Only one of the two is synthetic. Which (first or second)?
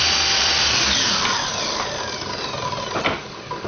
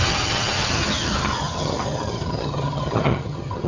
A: second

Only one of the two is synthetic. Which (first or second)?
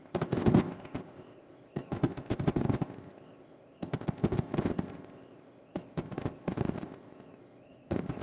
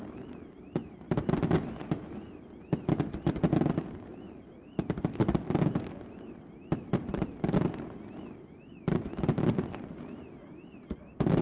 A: first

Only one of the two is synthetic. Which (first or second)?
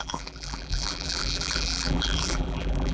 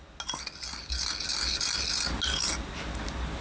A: first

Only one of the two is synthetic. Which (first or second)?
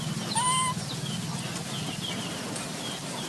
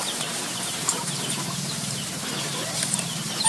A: second